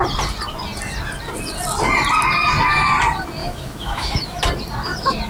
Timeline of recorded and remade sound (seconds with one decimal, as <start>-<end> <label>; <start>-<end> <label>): 0.0-3.4 recorded; 3.4-4.4 remade; 4.4-5.3 recorded